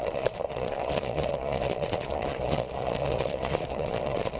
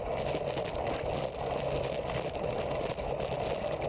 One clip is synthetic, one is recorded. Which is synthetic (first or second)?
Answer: first